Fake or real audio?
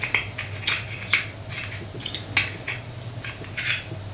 real